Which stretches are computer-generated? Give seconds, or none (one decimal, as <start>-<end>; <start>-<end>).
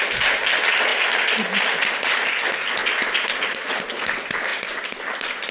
0.9-1.9; 4.5-5.5